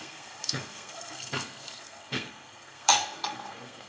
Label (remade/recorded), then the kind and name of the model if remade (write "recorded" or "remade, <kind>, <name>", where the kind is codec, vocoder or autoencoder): remade, codec, SNAC